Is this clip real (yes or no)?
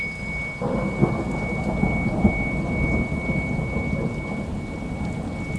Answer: yes